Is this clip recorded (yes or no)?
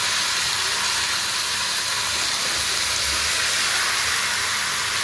yes